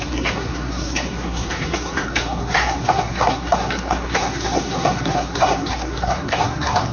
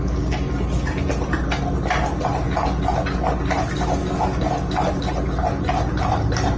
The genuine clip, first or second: second